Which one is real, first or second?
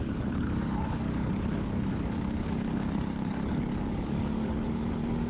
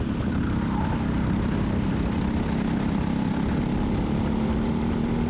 second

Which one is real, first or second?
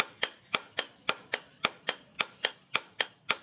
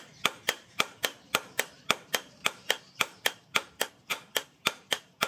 first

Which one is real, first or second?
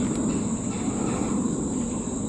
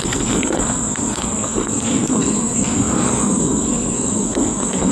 first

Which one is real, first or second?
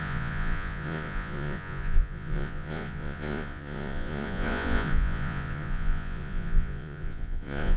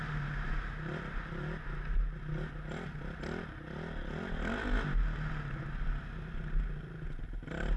second